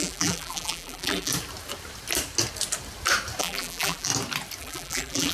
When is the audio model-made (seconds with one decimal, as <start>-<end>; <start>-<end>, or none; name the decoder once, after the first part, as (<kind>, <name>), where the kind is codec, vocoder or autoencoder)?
0.0-1.3 (vocoder, BigVGAN v2); 3.4-4.1; 4.6-5.3